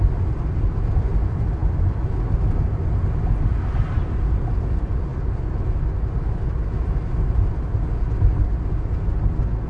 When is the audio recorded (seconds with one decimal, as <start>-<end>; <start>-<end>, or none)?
0.0-9.7